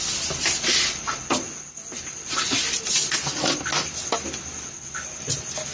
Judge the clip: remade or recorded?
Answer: recorded